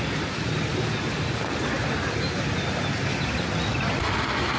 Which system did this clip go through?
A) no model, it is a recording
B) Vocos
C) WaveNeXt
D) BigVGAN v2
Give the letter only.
A